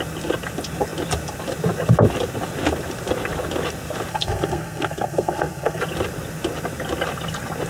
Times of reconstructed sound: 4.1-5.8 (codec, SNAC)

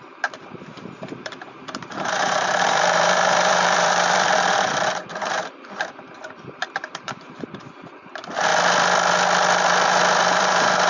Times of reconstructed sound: 0.0-8.5 (vocoder, BigVGAN v2); 10.3-10.9

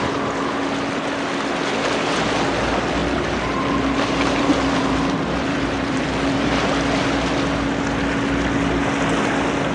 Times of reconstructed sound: 3.0-6.7 (vocoder, BigVGAN v2)

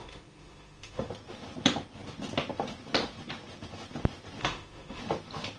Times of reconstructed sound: 0.0-1.1 (autoencoder, DAC-VAE); 4.4-5.0